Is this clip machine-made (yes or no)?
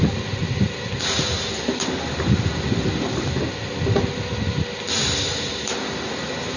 no